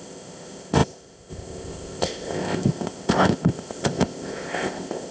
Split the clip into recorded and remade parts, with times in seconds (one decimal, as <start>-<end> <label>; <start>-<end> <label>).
0.0-5.1 remade